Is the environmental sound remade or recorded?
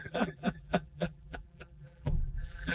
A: remade